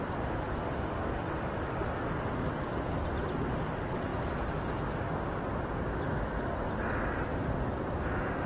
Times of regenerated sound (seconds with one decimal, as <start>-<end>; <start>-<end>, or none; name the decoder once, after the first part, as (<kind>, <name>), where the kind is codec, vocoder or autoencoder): 0.0-4.1 (vocoder, BigVGAN v2); 5.2-8.5

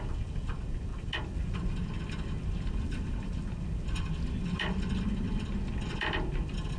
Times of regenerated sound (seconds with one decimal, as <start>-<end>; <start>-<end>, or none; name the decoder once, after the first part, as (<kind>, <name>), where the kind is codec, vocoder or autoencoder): none

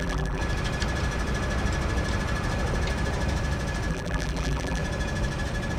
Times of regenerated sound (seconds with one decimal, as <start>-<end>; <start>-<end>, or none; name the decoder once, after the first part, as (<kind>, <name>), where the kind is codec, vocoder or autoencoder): 0.0-0.4 (vocoder, BigVGAN v2); 3.9-4.8

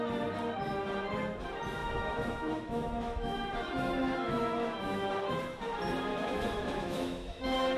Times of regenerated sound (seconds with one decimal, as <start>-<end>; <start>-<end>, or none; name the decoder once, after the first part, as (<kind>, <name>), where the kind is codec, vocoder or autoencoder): 1.8-5.1 (autoencoder, DAC-VAE); 6.1-7.8

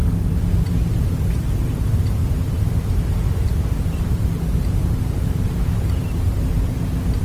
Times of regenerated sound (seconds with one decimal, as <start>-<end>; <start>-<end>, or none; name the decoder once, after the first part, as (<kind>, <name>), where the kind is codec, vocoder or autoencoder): 0.5-7.2 (vocoder, BigVGAN v2)

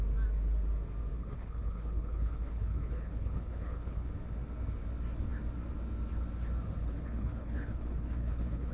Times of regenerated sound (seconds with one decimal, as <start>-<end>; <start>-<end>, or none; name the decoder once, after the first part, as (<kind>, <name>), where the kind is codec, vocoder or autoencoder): 1.1-4.1 (codec, HILCodec); 6.8-8.7